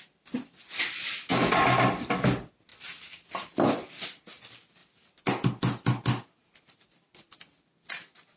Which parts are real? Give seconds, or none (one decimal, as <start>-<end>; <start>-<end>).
0.0-8.4